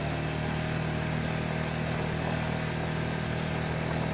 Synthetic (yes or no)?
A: no